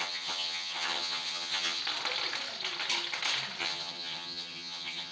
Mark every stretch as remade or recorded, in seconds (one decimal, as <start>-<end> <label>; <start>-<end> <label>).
0.0-1.8 remade; 1.8-3.6 recorded; 3.6-5.1 remade